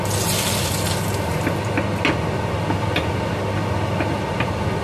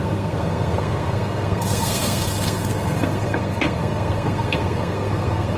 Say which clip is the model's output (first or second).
second